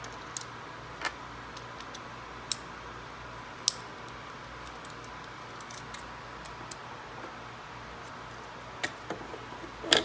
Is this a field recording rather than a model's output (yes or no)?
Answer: yes